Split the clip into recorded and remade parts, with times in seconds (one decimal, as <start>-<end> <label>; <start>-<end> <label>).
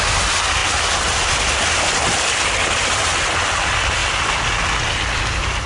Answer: 0.0-5.7 recorded